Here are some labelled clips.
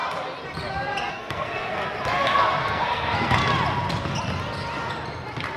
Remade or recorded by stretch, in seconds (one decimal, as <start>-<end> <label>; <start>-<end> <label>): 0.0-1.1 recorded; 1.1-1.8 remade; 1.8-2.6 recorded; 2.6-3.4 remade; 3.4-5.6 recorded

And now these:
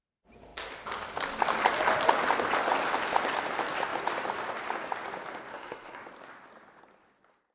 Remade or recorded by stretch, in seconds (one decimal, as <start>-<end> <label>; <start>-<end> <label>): 0.0-5.5 recorded; 5.5-6.0 remade; 6.0-7.5 recorded

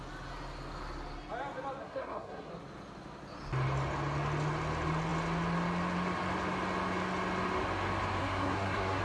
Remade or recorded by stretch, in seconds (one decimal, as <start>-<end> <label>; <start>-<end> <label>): 0.0-1.8 recorded; 1.8-2.5 remade; 2.5-8.2 recorded; 8.2-9.0 remade

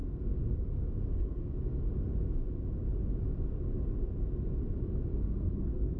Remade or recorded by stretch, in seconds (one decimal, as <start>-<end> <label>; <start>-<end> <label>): 0.0-1.5 remade; 1.5-5.1 recorded; 5.1-6.0 remade

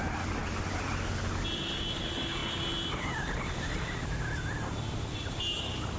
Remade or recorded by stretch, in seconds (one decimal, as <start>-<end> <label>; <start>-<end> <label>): 0.0-6.0 recorded

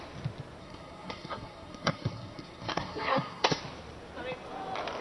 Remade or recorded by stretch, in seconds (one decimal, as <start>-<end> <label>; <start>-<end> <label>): 0.0-0.6 recorded; 0.6-3.6 remade; 3.6-5.0 recorded

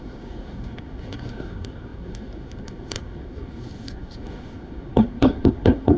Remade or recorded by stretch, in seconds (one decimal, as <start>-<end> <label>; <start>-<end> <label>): 0.0-6.0 remade